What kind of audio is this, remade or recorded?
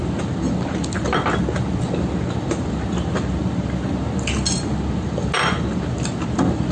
recorded